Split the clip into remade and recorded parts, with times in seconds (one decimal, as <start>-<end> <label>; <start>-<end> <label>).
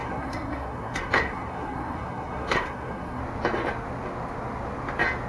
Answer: 0.0-3.2 remade; 3.2-5.3 recorded